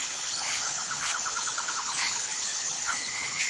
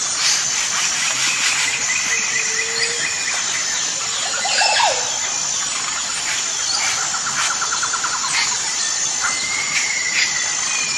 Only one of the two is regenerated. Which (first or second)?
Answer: first